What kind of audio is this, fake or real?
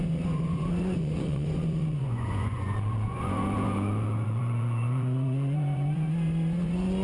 fake